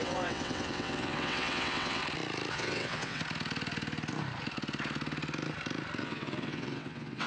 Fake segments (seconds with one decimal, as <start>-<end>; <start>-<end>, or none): 0.0-2.0; 2.5-3.2; 6.0-7.3